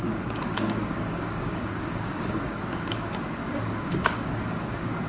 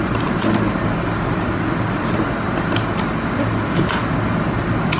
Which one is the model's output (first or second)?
first